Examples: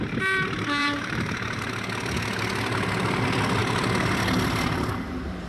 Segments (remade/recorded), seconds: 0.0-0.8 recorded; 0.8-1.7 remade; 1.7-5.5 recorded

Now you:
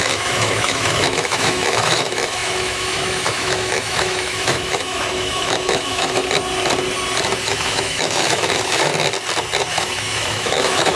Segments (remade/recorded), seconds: 0.0-6.2 remade; 6.2-7.4 recorded; 7.4-8.9 remade; 8.9-9.7 recorded; 9.7-11.0 remade

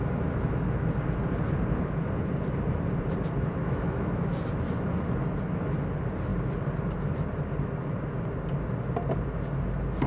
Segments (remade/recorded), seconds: 0.0-3.6 recorded; 3.6-4.4 remade; 4.4-10.1 recorded